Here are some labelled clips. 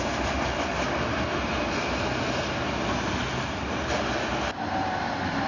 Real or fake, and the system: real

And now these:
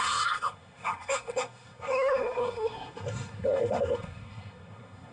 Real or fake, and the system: fake, codec, SNAC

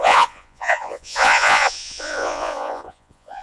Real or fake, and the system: fake, vocoder, Vocos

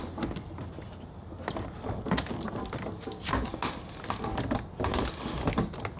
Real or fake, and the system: real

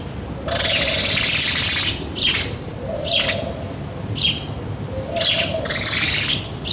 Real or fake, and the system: real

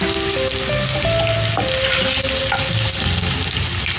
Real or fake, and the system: real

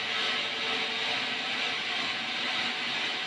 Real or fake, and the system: real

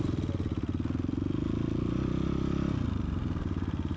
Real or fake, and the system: real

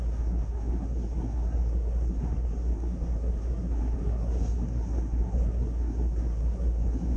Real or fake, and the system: fake, codec, SNAC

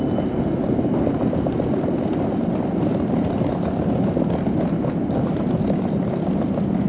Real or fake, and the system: real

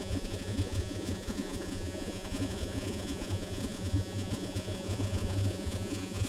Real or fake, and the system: fake, vocoder, Vocos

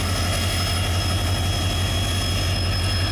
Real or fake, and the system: real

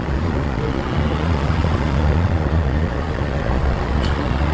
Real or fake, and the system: fake, vocoder, Vocos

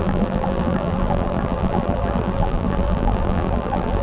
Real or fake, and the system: fake, vocoder, BigVGAN v2